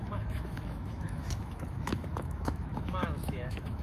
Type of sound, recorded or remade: remade